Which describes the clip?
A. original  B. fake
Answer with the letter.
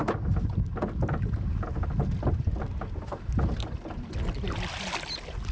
A